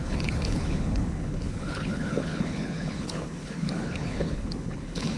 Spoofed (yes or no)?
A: yes